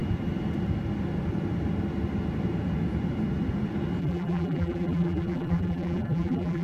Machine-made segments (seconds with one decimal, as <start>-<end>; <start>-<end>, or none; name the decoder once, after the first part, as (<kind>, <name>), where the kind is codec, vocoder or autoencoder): 4.0-6.6 (vocoder, BigVGAN v2)